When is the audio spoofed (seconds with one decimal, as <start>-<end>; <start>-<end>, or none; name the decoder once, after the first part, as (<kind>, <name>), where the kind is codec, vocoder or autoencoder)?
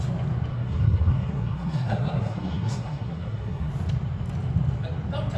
0.5-3.7 (codec, SNAC)